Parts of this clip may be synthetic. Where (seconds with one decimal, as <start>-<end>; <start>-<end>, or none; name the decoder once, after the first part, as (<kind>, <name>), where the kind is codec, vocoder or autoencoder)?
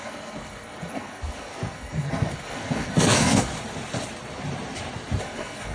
0.0-3.5 (codec, SNAC); 5.2-5.7